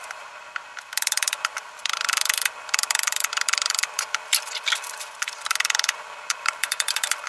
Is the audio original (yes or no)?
no